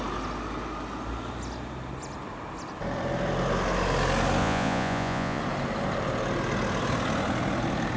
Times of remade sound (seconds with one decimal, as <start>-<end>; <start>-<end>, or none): 4.4-5.4